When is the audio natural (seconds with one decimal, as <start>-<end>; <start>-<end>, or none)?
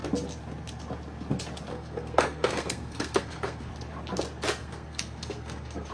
0.0-1.7; 3.7-4.6